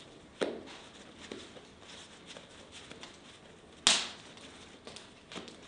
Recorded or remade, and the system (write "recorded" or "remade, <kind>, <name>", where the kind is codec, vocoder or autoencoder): recorded